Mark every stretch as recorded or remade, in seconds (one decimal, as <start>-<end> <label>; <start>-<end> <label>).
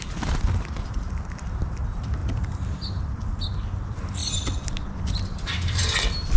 0.0-2.2 remade; 2.2-3.0 recorded; 3.0-6.4 remade